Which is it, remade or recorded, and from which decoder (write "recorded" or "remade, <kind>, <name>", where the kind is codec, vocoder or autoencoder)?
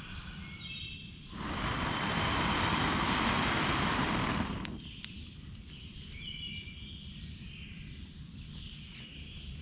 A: recorded